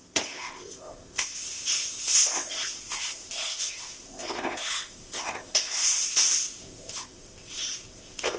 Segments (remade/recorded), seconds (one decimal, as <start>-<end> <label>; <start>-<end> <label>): 0.0-8.4 remade